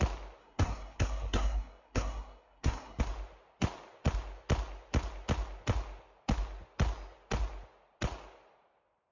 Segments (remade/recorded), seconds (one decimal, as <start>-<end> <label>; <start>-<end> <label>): 0.0-0.4 recorded; 0.4-3.0 remade; 3.0-9.1 recorded